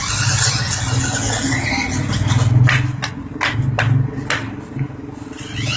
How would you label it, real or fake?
real